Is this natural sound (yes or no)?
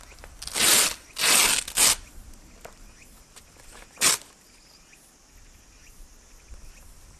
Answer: yes